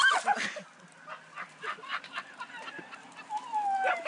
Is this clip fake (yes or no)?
no